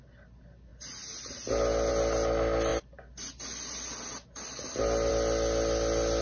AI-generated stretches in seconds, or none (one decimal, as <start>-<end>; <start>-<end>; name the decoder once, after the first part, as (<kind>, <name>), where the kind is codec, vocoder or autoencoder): none